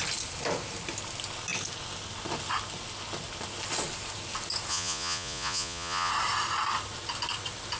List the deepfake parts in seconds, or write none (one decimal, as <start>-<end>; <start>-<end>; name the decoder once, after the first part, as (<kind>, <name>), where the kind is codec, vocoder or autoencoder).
4.7-6.1 (vocoder, Vocos)